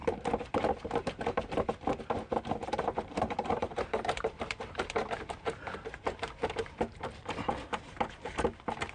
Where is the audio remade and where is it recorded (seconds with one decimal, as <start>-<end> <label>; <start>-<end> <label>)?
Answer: 0.0-2.0 remade; 2.0-2.6 recorded; 2.6-7.6 remade; 7.6-8.9 recorded